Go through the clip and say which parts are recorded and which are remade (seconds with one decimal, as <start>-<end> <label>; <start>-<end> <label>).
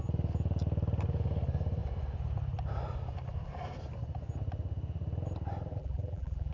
0.0-5.7 recorded; 5.7-6.5 remade